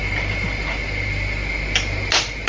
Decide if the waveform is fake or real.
real